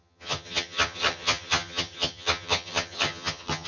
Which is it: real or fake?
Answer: fake